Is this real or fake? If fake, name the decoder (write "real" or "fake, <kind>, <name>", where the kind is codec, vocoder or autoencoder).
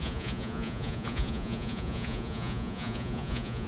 fake, vocoder, Vocos